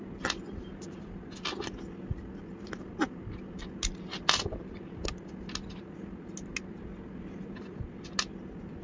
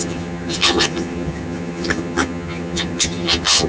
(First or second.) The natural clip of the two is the first